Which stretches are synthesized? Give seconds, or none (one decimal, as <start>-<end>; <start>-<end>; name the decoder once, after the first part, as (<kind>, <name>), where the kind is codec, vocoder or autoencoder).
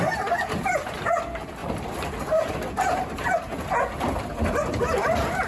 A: none